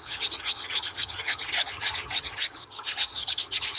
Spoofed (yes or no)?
yes